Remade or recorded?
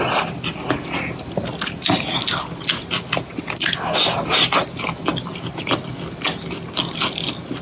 recorded